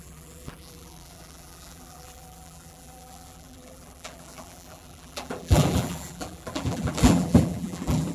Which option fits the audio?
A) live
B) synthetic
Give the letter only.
B